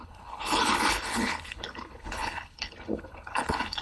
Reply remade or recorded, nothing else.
remade